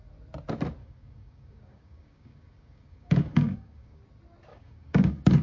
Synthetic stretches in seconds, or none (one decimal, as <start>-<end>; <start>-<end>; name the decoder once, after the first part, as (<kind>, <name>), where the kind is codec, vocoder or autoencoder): 0.8-4.0 (codec, DAC); 4.5-5.4